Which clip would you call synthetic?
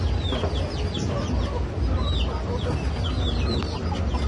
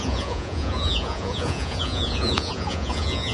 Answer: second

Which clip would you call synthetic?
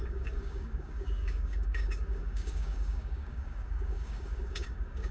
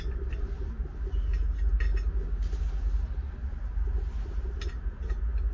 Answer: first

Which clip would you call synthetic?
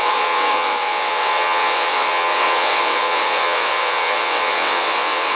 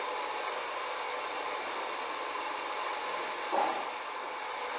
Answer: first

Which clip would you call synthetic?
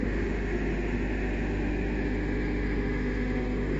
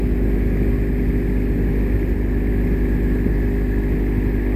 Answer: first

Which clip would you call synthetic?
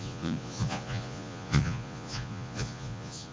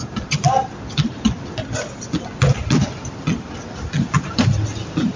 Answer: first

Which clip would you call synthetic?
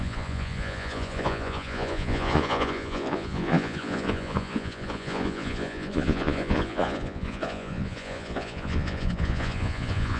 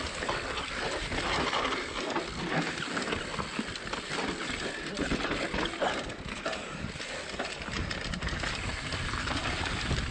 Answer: first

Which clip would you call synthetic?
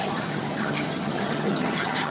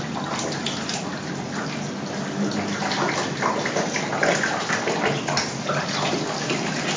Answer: first